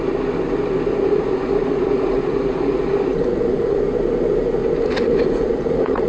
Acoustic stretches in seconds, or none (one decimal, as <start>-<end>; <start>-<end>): 0.0-0.9; 3.8-4.6